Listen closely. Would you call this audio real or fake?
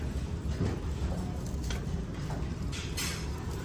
fake